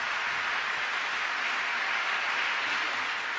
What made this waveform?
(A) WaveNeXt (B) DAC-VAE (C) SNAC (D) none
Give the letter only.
D